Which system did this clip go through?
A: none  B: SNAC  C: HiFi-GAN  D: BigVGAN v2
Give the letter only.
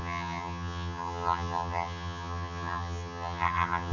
C